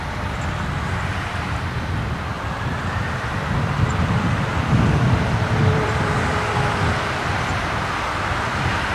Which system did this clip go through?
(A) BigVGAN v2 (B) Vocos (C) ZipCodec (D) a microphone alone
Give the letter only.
A